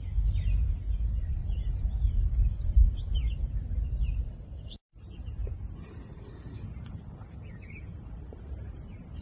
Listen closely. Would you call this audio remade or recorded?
recorded